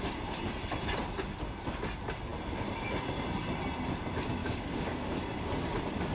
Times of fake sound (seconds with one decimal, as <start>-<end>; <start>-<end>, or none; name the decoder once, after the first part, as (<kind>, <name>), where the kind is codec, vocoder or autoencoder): 4.4-5.2 (codec, DAC)

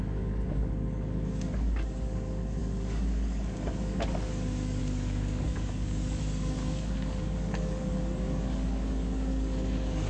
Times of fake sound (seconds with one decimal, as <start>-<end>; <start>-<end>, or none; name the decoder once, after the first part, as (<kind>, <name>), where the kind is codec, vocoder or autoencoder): 0.0-10.1 (codec, DAC)

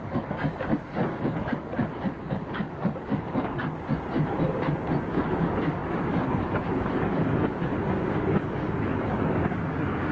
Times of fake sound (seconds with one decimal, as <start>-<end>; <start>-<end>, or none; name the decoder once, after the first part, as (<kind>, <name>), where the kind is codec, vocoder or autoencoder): 0.0-3.6 (codec, DAC); 5.1-10.1